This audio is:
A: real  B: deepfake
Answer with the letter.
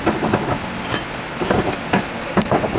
A